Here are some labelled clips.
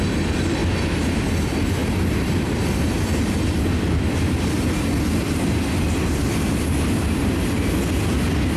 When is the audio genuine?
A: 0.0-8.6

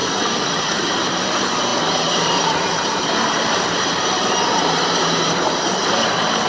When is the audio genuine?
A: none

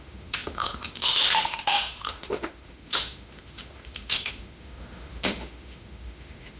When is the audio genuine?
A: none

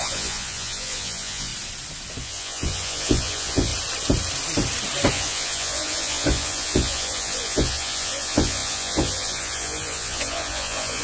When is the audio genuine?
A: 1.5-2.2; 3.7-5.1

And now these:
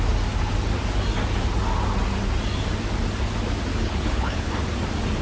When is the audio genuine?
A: 0.0-3.7; 4.5-5.2